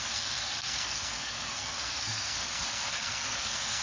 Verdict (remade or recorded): remade